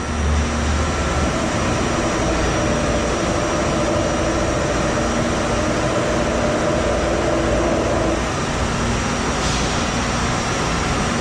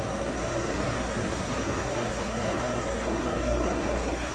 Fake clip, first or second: second